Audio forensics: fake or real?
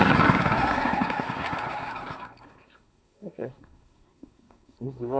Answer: fake